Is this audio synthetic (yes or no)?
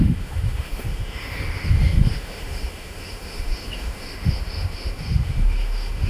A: yes